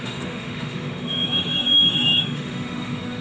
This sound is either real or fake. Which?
fake